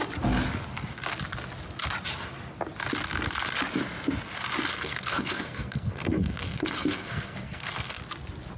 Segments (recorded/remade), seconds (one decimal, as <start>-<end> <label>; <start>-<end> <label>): 0.0-4.7 recorded; 4.7-8.0 remade; 8.0-8.6 recorded